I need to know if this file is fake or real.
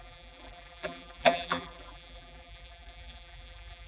fake